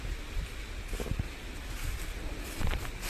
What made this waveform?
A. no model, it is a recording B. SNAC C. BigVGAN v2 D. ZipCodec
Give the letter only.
A